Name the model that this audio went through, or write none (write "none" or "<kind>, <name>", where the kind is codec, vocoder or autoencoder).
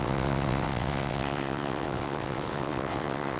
vocoder, WaveNeXt